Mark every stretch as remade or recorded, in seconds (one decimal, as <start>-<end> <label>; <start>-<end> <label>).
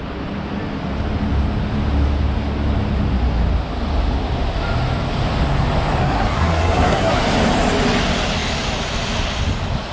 0.0-6.0 recorded; 6.0-7.2 remade; 7.2-9.9 recorded